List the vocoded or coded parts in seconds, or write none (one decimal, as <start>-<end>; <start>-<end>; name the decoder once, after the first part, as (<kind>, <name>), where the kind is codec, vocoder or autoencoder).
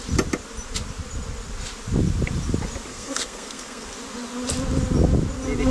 2.9-3.9 (codec, SNAC)